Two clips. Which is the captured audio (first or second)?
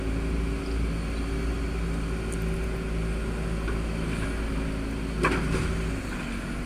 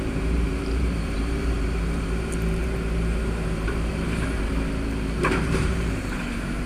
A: first